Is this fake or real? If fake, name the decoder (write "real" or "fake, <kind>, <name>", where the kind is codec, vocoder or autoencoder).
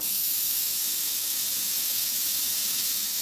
fake, autoencoder, DAC-VAE